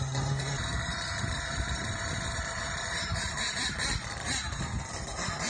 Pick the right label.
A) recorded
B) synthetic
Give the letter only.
B